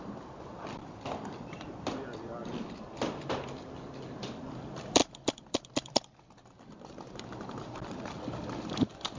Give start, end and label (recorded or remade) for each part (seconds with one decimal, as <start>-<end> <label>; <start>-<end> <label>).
0.0-2.4 remade; 2.4-4.4 recorded; 4.4-9.2 remade